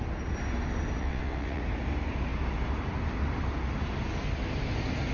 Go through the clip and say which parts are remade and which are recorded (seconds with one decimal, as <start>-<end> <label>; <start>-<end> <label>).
0.0-1.0 recorded; 1.0-1.6 remade; 1.6-5.1 recorded